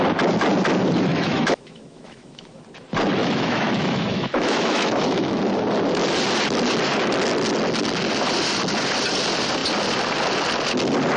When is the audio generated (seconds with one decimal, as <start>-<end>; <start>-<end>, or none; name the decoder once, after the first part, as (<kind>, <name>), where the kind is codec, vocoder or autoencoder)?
1.1-2.6 (autoencoder, DAC-VAE); 3.2-5.4